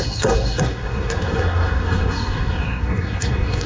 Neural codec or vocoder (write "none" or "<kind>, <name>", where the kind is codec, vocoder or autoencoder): codec, SNAC